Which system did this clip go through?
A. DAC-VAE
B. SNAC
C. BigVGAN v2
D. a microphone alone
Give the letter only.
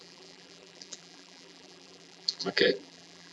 C